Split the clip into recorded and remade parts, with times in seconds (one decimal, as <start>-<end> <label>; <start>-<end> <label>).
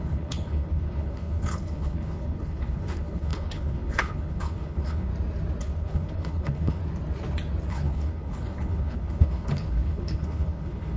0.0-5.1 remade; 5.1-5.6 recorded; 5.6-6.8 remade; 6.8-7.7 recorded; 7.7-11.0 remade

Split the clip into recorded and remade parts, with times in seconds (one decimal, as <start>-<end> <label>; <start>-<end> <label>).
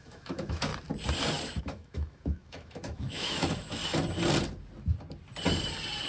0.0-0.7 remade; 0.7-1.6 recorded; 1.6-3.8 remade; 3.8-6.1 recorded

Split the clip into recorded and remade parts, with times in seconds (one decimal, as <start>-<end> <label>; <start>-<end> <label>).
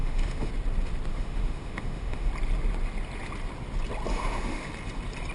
0.0-0.5 remade; 0.5-1.1 recorded; 1.1-2.3 remade; 2.3-4.1 recorded; 4.1-4.7 remade; 4.7-5.3 recorded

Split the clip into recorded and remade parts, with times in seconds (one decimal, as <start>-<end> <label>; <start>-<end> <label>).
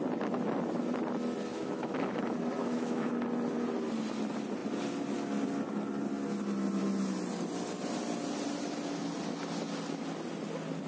0.0-1.5 recorded; 1.5-2.2 remade; 2.2-2.6 recorded; 2.6-3.1 remade; 3.1-10.9 recorded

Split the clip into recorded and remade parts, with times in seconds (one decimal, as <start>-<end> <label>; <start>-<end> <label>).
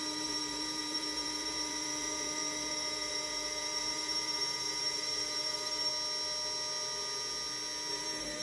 0.0-5.9 remade; 5.9-7.9 recorded; 7.9-8.4 remade